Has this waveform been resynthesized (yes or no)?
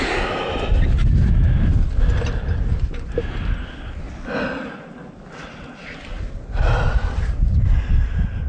no